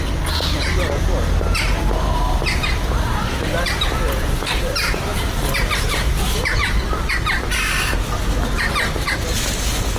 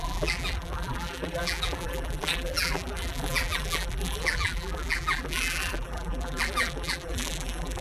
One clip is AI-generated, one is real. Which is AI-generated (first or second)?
second